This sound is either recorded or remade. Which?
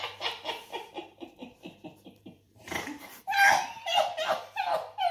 remade